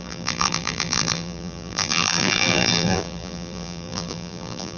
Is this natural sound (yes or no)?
no